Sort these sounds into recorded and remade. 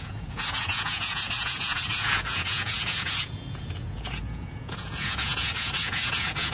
remade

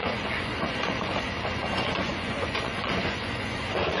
remade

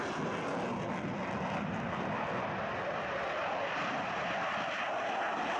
recorded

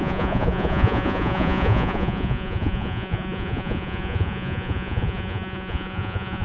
remade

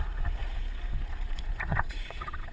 remade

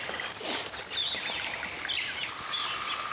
recorded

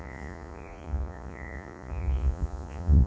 remade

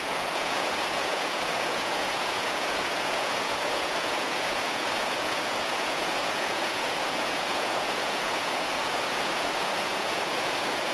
remade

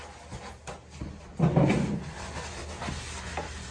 recorded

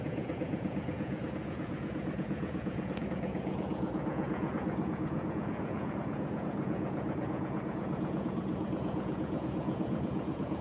remade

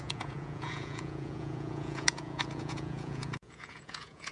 remade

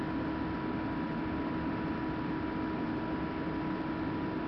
recorded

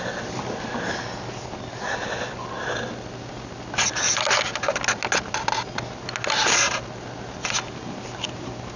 recorded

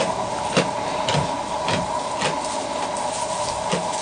recorded